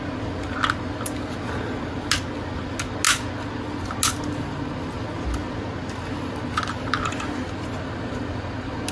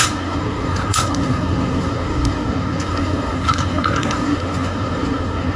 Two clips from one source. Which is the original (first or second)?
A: first